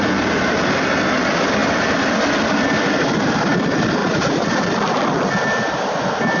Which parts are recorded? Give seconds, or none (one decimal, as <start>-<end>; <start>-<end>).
0.0-4.0; 4.6-6.4